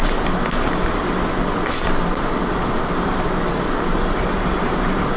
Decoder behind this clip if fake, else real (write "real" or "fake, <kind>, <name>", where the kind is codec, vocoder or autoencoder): fake, vocoder, BigVGAN v2